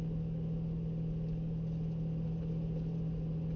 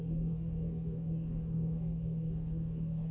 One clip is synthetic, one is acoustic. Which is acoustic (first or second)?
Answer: first